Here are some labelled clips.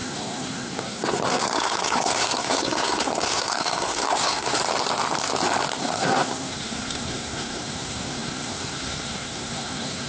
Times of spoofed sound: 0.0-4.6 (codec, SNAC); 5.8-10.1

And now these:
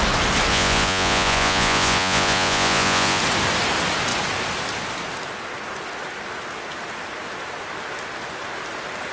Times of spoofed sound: 0.5-3.2 (vocoder, Vocos)

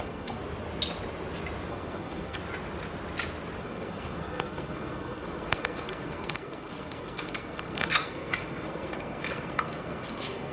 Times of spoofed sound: 0.0-0.4 (codec, SNAC); 1.7-2.4; 3.6-10.5

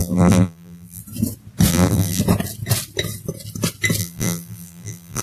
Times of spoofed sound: 0.0-1.0 (vocoder, BigVGAN v2); 1.7-2.2; 4.0-5.2

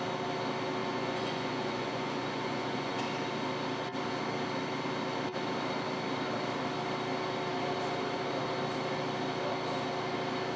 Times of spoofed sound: 0.8-3.0 (vocoder, Vocos)

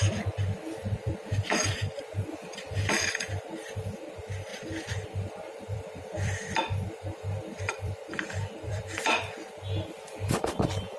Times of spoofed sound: 0.0-11.0 (vocoder, BigVGAN v2)

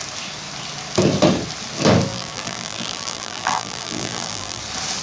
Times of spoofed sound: 2.1-4.6 (vocoder, BigVGAN v2)